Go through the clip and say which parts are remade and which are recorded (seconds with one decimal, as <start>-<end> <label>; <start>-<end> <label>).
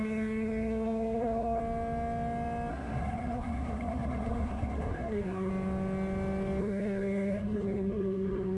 0.0-1.6 remade; 1.6-2.7 recorded; 2.7-5.5 remade; 5.5-6.6 recorded; 6.6-8.6 remade